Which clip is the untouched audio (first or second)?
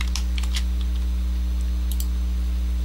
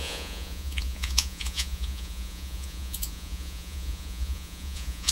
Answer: first